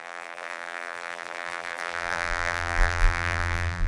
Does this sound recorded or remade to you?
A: remade